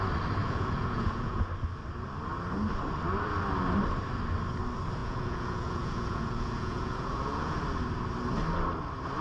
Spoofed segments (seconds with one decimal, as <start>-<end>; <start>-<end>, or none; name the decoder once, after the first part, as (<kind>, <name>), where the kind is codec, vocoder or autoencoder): 0.4-1.5 (vocoder, Vocos); 5.0-7.6